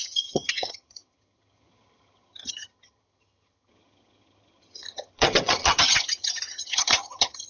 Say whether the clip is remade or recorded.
remade